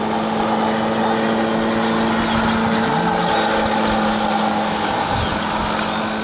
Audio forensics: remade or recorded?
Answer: recorded